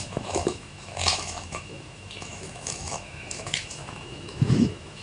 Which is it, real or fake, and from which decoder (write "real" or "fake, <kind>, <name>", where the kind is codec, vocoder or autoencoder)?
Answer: fake, autoencoder, DAC-VAE